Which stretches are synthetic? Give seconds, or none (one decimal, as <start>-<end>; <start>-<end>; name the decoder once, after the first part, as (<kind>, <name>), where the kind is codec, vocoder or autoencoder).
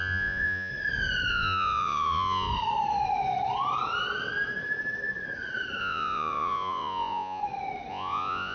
0.0-0.7 (vocoder, Vocos); 1.3-2.5; 5.8-7.4; 7.9-8.5